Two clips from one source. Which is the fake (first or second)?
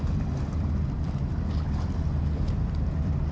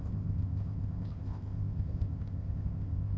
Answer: second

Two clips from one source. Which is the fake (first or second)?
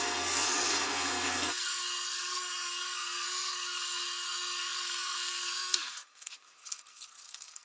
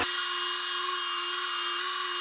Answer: first